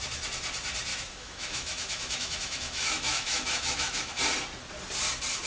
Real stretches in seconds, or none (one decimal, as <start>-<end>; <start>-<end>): 0.0-0.9; 4.2-5.5